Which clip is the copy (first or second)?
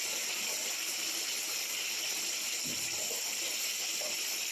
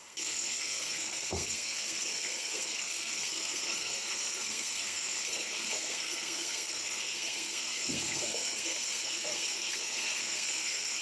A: second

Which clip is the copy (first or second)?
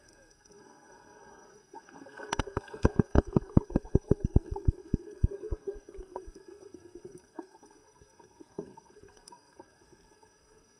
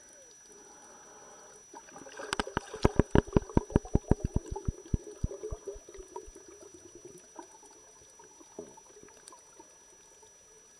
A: first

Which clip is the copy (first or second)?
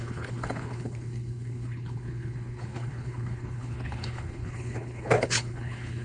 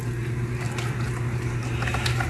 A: first